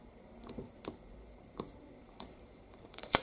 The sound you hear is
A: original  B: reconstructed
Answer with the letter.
B